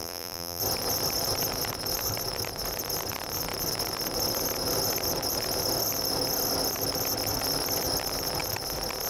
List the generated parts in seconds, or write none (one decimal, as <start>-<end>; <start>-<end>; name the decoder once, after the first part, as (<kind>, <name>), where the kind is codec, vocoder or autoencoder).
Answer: 0.0-0.6 (vocoder, BigVGAN v2)